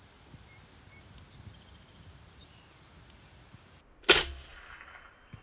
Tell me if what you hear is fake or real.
real